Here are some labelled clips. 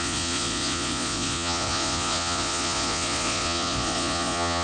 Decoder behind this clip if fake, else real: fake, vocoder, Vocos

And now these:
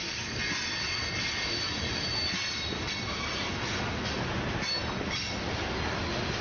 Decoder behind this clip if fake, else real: real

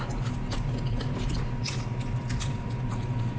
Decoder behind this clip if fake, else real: real